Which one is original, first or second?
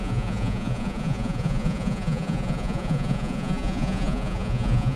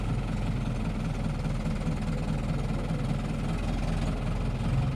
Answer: second